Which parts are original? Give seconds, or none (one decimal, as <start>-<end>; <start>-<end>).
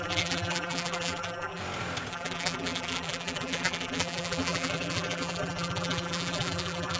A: 1.6-2.1